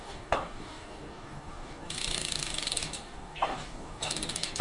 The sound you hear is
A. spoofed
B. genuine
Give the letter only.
A